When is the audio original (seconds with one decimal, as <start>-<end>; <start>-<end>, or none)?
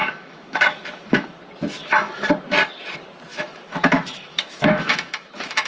1.4-1.8; 2.3-3.3